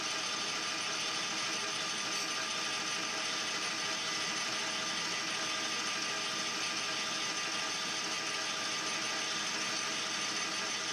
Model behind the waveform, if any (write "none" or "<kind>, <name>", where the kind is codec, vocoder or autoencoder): none